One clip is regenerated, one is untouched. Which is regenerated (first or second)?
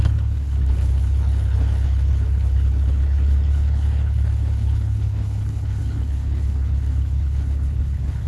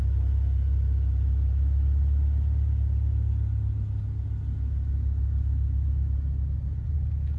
first